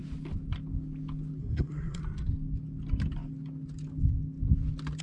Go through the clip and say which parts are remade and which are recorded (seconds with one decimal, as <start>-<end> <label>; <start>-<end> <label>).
0.0-1.4 recorded; 1.4-2.0 remade; 2.0-5.0 recorded